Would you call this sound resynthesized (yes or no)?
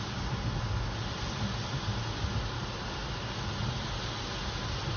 no